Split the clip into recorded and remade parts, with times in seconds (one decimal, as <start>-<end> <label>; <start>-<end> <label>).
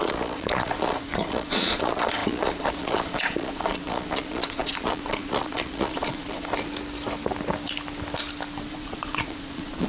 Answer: 0.0-6.5 remade; 6.5-8.7 recorded; 8.7-9.9 remade